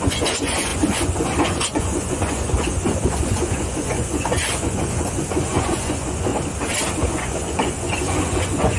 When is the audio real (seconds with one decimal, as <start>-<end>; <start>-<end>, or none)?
6.3-7.1